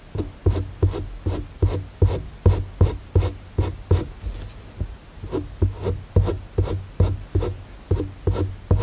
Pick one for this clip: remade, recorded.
recorded